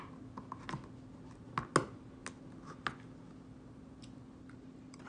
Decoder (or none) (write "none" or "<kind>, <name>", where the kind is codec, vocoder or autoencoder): none